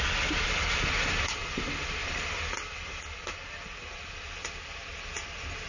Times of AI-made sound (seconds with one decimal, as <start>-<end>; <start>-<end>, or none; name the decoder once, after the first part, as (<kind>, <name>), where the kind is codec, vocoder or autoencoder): none